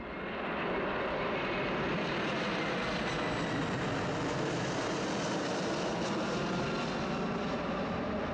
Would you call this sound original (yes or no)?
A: yes